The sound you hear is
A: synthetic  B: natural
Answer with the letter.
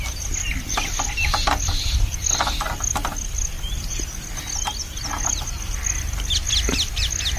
B